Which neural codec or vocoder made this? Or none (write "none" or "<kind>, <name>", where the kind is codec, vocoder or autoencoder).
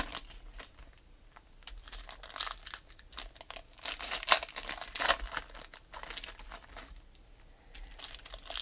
none